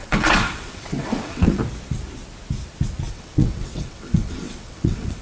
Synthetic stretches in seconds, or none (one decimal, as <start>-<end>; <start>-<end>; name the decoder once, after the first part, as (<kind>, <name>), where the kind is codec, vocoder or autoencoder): 0.0-1.6 (vocoder, WaveNeXt); 3.1-5.2